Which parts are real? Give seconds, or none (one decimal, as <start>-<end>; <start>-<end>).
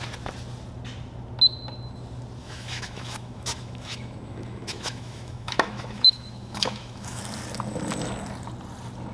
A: 0.0-2.4; 7.2-9.1